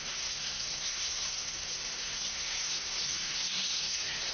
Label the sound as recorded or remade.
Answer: remade